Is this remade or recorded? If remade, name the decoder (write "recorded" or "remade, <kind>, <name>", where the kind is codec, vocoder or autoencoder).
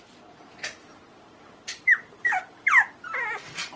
recorded